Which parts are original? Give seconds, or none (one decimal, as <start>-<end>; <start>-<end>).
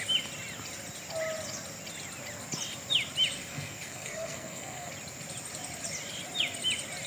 0.0-3.4; 4.9-7.1